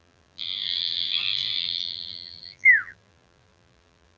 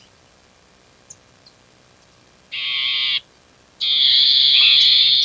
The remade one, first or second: first